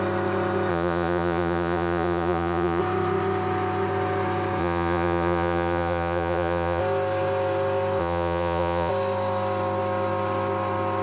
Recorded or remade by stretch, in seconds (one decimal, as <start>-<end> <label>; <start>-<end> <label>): 0.0-0.7 recorded; 0.7-2.8 remade; 2.8-4.6 recorded; 4.6-6.8 remade; 6.8-8.0 recorded; 8.0-8.9 remade; 8.9-11.0 recorded